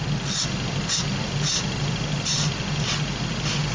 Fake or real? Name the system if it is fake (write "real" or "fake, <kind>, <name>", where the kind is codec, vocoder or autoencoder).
real